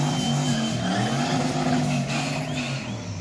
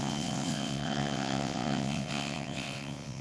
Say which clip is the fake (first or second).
second